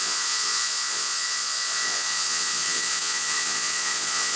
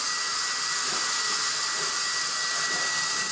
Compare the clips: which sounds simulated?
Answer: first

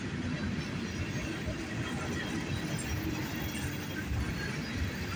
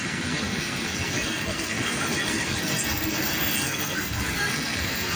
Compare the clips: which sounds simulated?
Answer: second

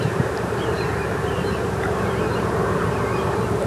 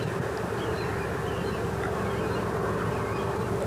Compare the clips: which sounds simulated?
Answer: first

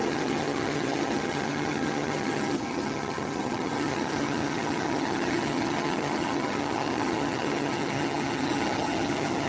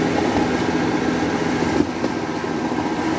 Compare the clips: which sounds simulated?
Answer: first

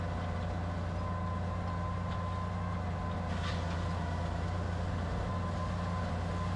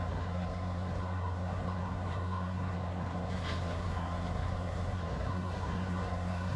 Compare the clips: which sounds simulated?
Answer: second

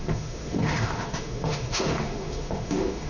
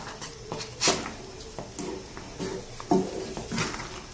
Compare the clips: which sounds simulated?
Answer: first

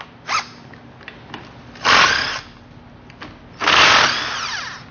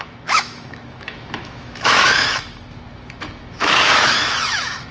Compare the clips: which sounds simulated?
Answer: second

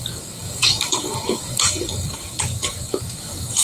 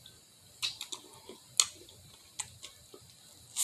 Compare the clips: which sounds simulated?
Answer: first